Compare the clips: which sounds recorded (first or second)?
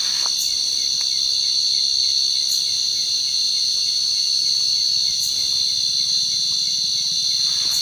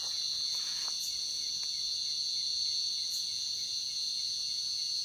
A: first